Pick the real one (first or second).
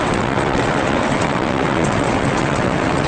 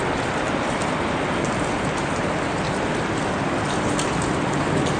second